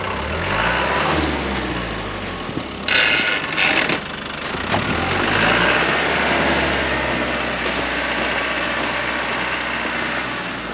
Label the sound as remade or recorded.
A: recorded